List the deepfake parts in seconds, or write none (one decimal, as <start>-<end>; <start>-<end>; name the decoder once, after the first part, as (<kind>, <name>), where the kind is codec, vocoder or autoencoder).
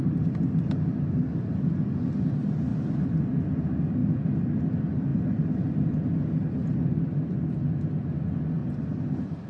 8.6-9.5 (vocoder, BigVGAN v2)